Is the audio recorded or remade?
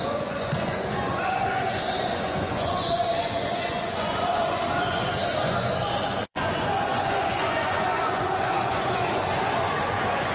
remade